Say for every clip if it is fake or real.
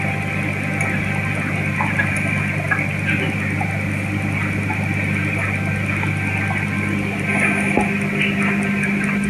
real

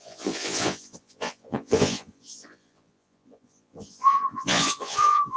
fake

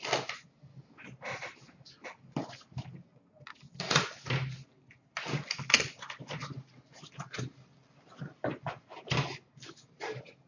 real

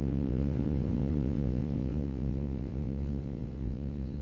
fake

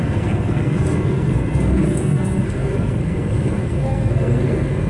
fake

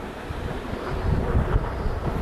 fake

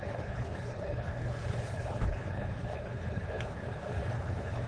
fake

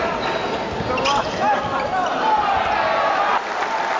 real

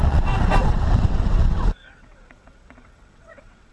fake